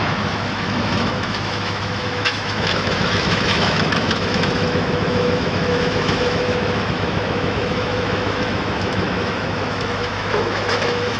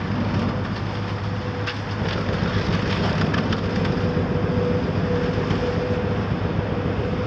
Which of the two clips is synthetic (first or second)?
first